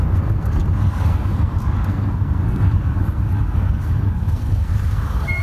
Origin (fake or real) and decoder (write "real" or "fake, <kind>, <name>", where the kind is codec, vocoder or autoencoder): fake, codec, SNAC